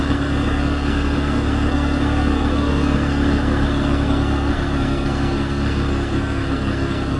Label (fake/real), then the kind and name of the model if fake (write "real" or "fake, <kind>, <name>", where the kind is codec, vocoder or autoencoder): fake, codec, SNAC